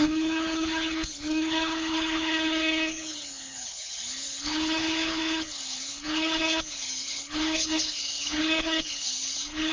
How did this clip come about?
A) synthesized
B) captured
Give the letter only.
A